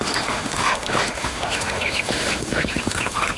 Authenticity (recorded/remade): remade